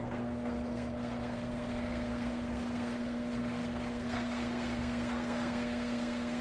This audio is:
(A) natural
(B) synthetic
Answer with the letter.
B